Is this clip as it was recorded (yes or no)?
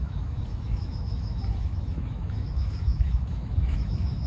no